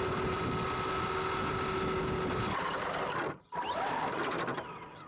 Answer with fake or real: real